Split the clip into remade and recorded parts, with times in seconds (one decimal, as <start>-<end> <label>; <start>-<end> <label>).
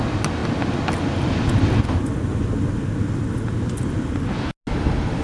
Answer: 0.0-5.2 recorded